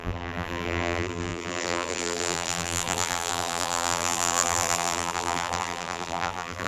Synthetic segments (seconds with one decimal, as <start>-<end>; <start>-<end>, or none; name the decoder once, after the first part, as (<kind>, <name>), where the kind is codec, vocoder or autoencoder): 0.0-6.7 (vocoder, BigVGAN v2)